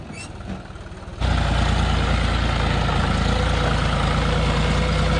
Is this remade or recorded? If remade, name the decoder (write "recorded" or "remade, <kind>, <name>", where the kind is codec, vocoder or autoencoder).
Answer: recorded